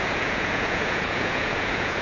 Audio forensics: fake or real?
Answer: fake